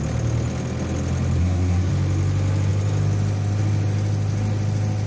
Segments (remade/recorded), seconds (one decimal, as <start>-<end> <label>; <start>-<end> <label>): 0.0-1.4 recorded; 1.4-1.9 remade; 1.9-5.1 recorded